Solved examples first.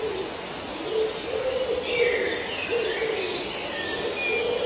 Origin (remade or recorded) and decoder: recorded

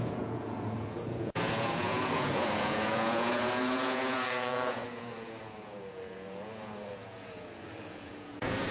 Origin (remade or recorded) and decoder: remade, vocoder, Vocos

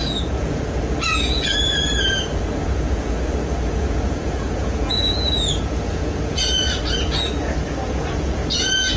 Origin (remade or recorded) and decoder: remade, vocoder, Vocos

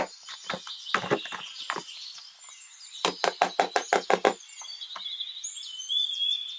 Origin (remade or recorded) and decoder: recorded